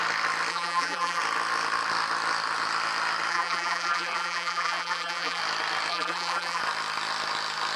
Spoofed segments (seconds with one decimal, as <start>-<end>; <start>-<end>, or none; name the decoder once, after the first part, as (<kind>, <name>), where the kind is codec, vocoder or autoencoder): 0.5-1.2 (vocoder, BigVGAN v2); 3.3-5.4; 5.9-6.6